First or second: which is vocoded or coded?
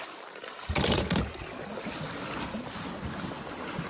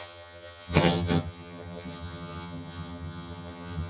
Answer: second